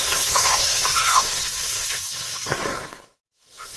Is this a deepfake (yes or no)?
yes